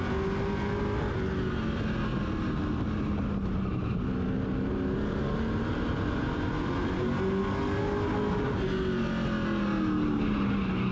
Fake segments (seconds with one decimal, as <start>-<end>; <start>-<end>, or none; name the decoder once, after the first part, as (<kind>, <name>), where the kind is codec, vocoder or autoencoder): none